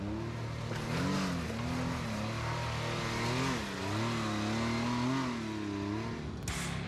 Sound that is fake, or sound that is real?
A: real